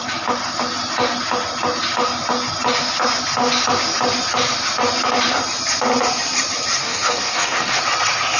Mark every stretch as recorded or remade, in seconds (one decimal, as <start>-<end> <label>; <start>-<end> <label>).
0.0-6.8 recorded; 6.8-7.8 remade; 7.8-8.4 recorded